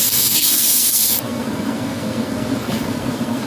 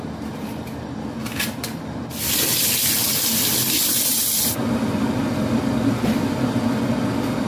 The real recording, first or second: second